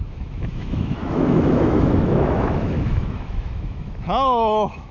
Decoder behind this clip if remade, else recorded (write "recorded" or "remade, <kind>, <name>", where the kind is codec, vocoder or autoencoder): remade, autoencoder, DAC-VAE